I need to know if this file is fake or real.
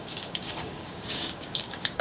fake